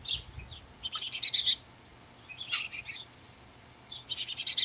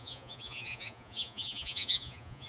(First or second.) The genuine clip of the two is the first